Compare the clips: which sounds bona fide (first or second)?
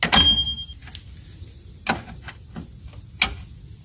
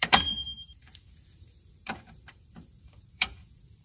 first